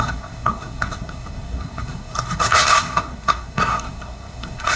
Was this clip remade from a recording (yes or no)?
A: yes